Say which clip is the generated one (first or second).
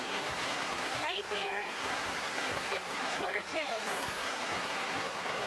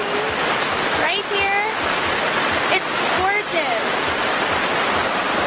first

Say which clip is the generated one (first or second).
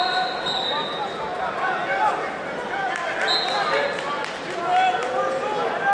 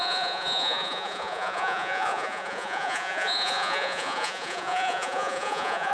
second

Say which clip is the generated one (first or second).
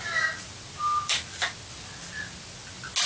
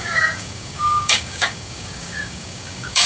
second